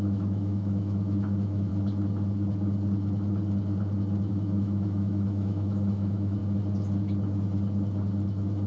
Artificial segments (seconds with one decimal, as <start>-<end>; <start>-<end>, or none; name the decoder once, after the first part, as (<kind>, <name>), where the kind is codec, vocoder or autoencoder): 0.0-1.7 (autoencoder, DAC-VAE); 4.3-6.4